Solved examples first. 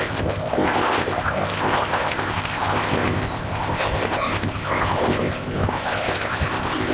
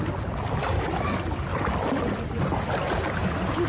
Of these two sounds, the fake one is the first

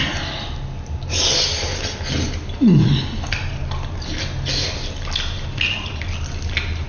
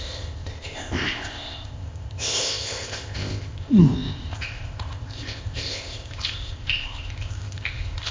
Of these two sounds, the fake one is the second